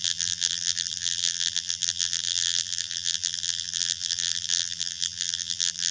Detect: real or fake fake